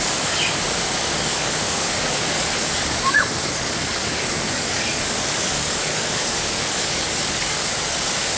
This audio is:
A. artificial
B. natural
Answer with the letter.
A